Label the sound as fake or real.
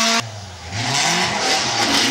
real